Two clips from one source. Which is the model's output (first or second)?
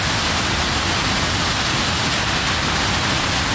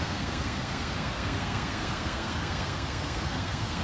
second